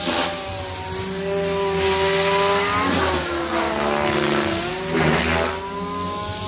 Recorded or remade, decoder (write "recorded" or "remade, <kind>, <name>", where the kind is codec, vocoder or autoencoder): recorded